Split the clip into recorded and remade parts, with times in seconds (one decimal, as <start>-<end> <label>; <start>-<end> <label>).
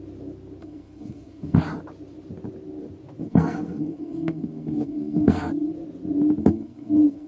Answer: 0.0-0.6 recorded; 0.6-1.6 remade; 1.6-3.2 recorded; 3.2-5.7 remade; 5.7-6.4 recorded; 6.4-7.3 remade